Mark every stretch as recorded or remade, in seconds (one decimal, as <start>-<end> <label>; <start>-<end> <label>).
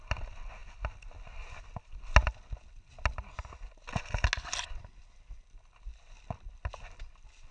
0.0-7.5 recorded